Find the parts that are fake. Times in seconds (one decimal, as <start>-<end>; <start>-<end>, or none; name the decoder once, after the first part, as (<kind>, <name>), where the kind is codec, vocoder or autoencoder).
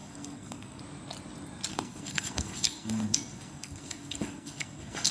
0.0-0.8 (codec, SNAC); 1.7-5.1